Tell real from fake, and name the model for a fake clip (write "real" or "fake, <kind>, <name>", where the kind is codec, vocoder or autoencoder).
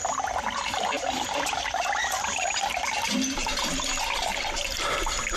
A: fake, vocoder, BigVGAN v2